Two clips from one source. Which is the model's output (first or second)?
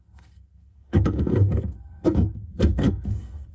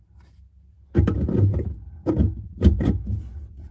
first